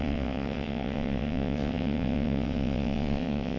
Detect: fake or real fake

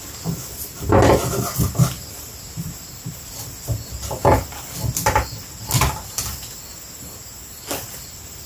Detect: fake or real real